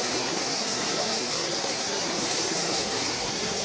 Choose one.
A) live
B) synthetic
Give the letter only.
B